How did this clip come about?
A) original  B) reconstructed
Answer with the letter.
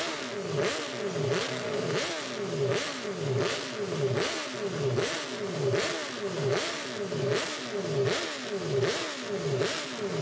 A